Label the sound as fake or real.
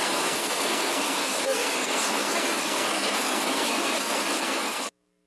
fake